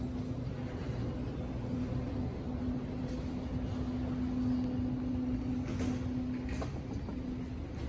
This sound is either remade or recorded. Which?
recorded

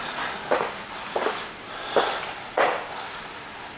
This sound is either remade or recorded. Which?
recorded